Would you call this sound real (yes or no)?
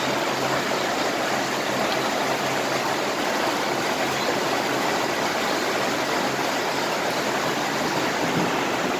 yes